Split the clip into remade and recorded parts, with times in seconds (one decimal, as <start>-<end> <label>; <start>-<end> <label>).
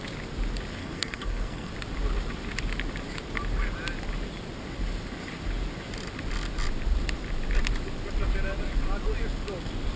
0.0-0.8 recorded; 0.8-1.7 remade; 1.7-10.0 recorded